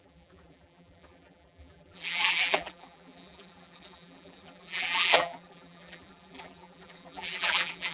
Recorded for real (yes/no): no